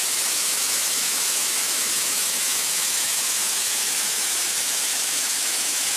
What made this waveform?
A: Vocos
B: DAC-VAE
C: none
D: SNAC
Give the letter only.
B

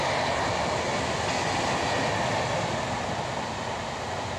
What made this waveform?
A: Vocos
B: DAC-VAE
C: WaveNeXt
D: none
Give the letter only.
D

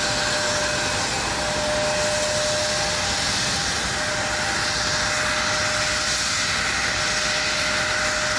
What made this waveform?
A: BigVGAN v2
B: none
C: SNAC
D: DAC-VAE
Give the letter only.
B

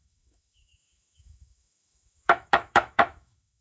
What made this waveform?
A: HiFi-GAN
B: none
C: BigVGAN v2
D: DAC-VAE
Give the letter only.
D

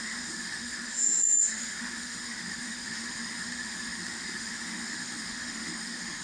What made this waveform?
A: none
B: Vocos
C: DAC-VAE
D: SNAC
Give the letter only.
C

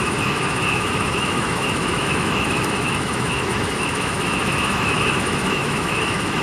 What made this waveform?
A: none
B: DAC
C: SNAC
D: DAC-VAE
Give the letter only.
D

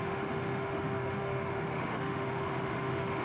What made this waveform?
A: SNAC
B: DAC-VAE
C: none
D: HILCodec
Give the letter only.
B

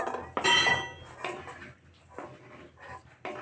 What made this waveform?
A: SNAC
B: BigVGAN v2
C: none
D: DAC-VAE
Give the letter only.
C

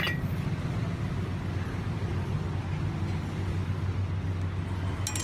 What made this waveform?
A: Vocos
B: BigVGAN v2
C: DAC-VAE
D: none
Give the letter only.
D